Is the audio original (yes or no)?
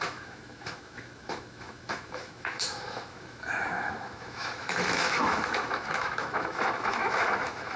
no